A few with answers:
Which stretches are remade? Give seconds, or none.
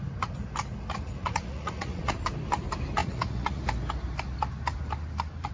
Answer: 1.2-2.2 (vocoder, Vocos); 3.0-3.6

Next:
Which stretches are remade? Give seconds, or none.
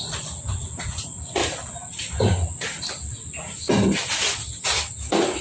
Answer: 0.0-1.4 (vocoder, Vocos); 4.6-5.4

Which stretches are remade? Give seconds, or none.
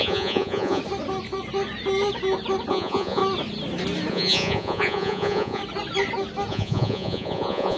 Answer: 0.0-0.8 (vocoder, Vocos); 2.7-3.2; 4.1-5.6; 6.5-7.8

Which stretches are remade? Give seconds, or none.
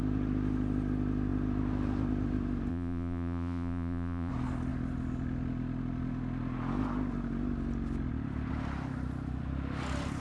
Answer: 2.7-4.3 (vocoder, Vocos)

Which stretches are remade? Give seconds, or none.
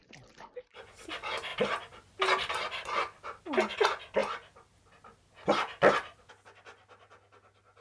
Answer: none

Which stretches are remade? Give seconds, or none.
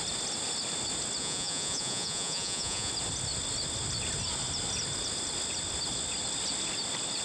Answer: 1.2-2.9 (vocoder, Vocos)